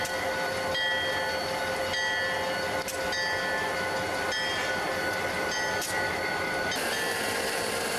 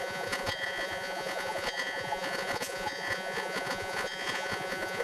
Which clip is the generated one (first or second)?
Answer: second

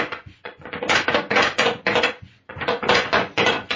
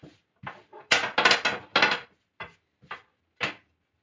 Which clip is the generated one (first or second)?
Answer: first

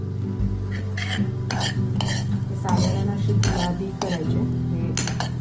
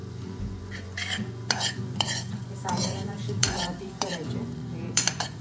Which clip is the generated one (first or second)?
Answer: second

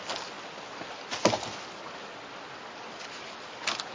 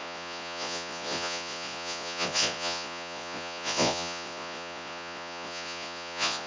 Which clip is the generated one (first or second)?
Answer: second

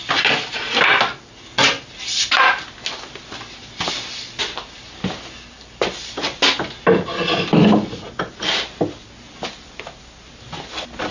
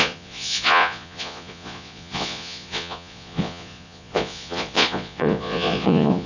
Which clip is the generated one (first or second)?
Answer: second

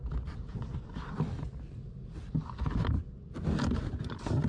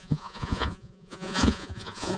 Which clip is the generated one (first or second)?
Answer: second